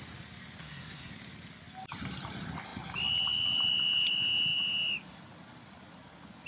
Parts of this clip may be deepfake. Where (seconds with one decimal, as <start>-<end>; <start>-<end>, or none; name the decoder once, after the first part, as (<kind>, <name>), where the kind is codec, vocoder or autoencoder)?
0.6-1.1 (codec, SNAC)